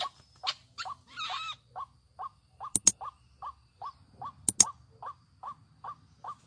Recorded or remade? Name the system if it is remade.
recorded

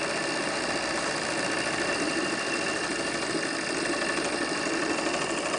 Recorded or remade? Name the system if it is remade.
recorded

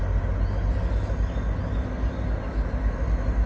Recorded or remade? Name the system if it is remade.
recorded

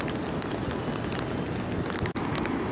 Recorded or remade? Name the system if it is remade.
recorded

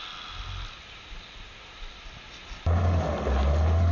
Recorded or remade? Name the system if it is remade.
recorded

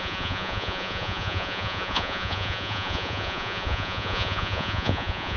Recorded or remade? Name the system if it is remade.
remade, vocoder, Vocos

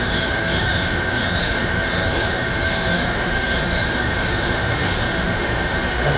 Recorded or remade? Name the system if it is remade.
remade, autoencoder, DAC-VAE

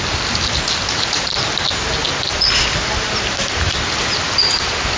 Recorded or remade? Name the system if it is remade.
recorded